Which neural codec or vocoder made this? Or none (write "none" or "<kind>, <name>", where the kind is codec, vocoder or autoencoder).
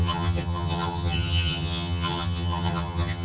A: vocoder, HiFi-GAN